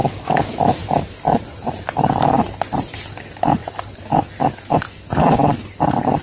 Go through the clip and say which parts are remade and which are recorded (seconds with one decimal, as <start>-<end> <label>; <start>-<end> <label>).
0.0-0.8 recorded; 0.8-3.0 remade; 3.0-6.2 recorded